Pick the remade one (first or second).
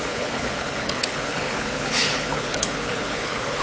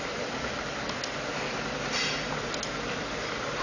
first